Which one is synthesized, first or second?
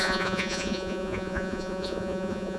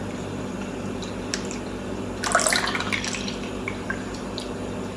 first